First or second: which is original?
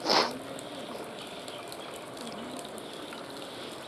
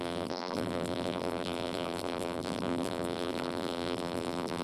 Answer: first